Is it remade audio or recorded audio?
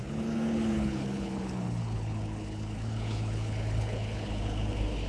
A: remade